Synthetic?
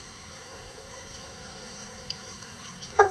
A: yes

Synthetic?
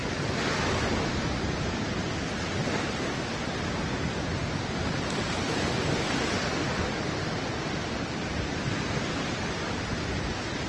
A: no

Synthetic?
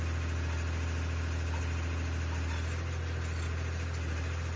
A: no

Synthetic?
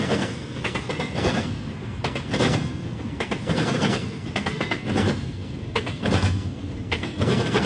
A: yes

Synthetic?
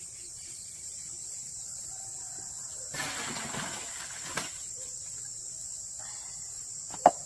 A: no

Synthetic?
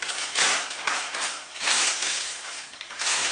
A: yes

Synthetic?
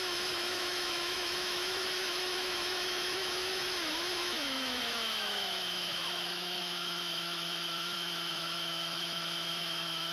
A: yes